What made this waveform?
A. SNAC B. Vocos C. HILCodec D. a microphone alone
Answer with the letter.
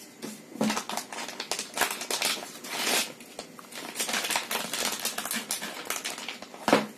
D